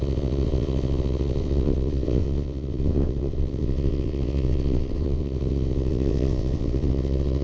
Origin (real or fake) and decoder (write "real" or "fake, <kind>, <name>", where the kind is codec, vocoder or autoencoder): fake, vocoder, WaveNeXt